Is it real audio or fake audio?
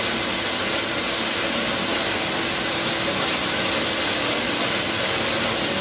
real